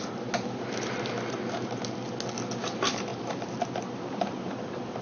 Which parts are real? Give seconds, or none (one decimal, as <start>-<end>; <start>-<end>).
0.0-5.0